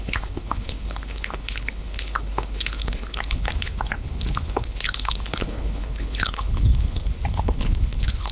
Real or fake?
fake